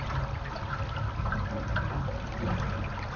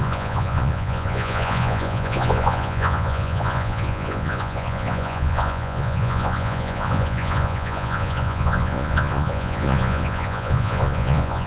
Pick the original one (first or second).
first